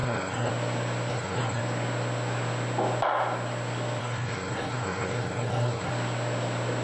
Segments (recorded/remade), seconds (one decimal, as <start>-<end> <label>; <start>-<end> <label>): 0.0-0.5 remade; 0.5-1.1 recorded; 1.1-1.6 remade; 1.6-4.0 recorded; 4.0-5.9 remade; 5.9-6.8 recorded